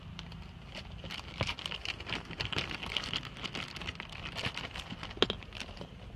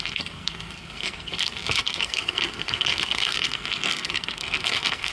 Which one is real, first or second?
first